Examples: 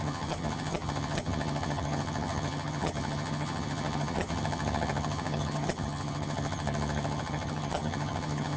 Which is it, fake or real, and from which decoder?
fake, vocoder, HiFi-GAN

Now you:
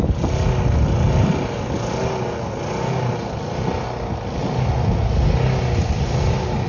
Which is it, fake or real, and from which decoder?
real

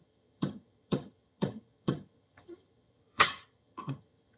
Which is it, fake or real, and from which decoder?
fake, vocoder, HiFi-GAN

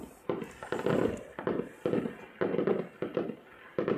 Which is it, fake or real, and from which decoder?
real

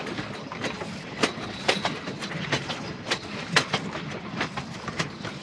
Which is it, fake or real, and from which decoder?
real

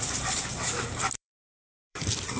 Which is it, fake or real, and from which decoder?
fake, vocoder, BigVGAN v2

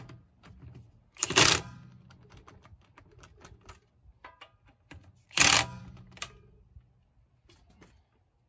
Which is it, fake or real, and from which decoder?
real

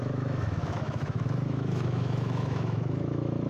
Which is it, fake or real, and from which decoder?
fake, autoencoder, DAC-VAE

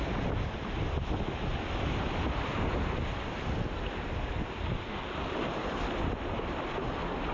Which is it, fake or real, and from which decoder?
real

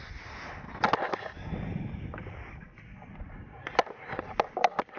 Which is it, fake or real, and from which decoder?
real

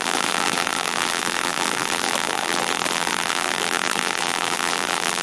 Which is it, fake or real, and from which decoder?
fake, vocoder, BigVGAN v2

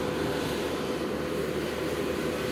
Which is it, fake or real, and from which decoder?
real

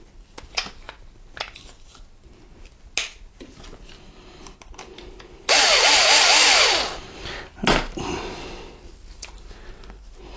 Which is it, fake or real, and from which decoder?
real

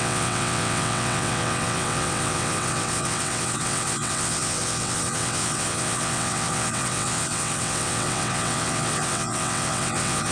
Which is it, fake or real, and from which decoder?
fake, vocoder, WaveNeXt